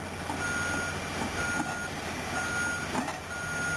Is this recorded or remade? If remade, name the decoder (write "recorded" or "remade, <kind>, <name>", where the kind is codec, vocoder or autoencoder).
recorded